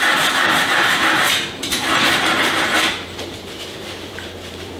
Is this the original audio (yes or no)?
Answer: no